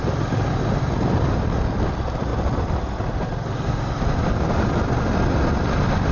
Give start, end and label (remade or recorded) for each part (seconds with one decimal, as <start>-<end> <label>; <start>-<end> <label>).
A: 0.0-6.1 recorded